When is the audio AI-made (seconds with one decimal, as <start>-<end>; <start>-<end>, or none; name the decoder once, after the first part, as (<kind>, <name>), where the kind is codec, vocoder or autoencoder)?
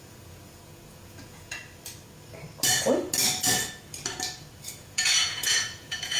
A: 0.0-1.6 (vocoder, Vocos); 4.7-6.2